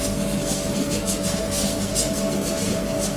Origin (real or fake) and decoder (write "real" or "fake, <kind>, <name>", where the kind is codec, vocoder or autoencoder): fake, codec, SNAC